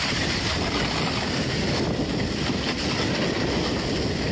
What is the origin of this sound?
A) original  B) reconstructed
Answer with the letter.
A